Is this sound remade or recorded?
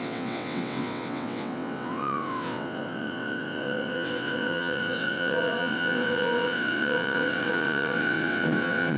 remade